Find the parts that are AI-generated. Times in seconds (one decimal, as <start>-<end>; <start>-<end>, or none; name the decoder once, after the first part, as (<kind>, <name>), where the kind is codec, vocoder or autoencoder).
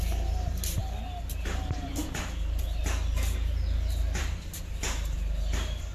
none